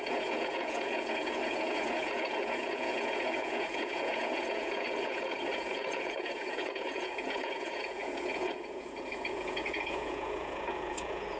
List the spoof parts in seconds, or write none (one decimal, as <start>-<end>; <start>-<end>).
0.0-11.4